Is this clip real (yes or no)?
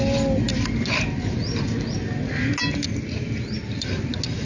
yes